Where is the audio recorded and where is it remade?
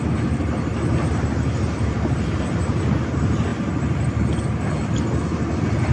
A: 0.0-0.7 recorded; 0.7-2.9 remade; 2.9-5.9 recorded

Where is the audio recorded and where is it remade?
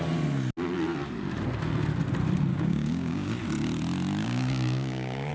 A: 0.0-2.5 recorded; 2.5-3.3 remade; 3.3-4.2 recorded; 4.2-5.3 remade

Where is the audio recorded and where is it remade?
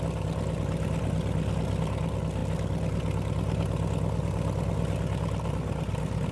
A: 0.0-6.3 recorded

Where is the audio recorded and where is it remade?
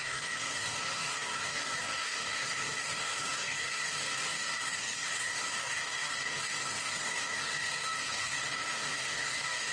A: 0.0-9.7 remade